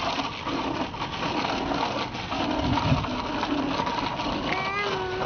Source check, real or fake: real